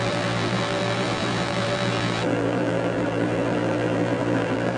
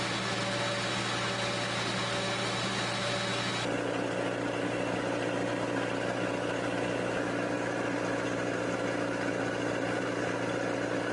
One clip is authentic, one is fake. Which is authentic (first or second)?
second